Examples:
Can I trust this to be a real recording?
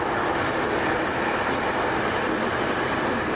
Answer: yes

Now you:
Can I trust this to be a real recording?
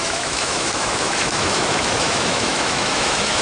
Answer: no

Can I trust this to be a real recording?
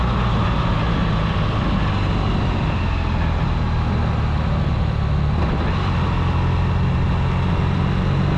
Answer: yes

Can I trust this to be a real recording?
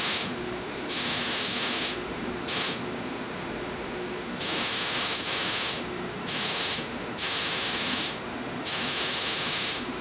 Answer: no